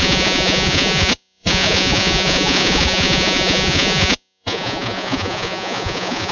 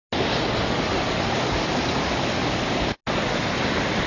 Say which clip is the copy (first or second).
first